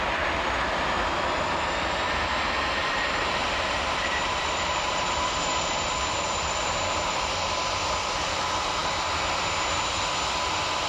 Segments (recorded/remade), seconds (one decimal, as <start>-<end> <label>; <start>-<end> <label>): 0.0-2.8 recorded; 2.8-6.6 remade; 6.6-10.9 recorded